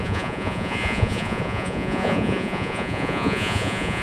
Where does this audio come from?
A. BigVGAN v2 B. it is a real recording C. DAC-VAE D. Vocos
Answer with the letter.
D